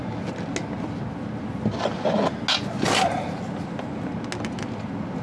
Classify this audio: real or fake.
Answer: real